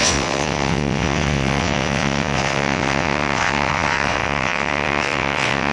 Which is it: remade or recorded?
remade